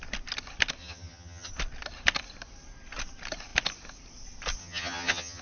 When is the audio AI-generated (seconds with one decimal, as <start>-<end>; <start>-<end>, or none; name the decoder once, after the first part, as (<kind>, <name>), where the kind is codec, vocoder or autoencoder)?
0.8-1.5 (vocoder, HiFi-GAN); 4.6-5.4